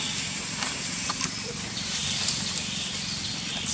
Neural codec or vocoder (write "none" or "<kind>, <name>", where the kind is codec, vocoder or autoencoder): none